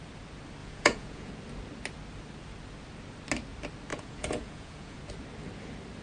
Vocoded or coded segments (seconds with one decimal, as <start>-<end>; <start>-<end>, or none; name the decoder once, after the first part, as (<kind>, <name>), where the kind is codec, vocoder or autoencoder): 0.6-1.3 (vocoder, Vocos); 3.9-5.0